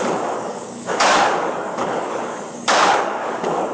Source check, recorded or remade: remade